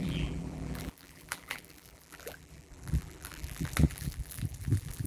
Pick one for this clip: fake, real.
fake